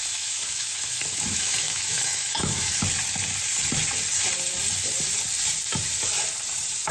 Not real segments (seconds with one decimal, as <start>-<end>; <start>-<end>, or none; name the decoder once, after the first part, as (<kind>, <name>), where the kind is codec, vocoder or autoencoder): 0.0-2.7 (autoencoder, DAC-VAE)